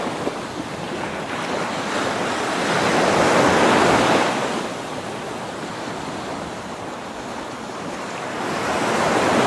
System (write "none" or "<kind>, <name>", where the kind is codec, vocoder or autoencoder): none